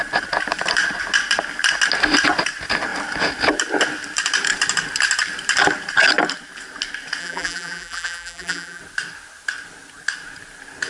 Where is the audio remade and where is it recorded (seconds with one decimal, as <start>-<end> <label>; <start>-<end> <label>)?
0.0-7.2 recorded; 7.2-8.8 remade; 8.8-10.9 recorded